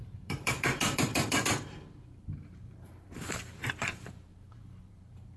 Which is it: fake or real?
fake